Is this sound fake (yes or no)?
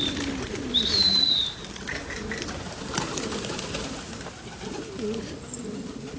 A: no